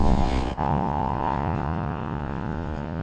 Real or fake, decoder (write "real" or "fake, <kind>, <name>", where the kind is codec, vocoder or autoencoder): fake, vocoder, Vocos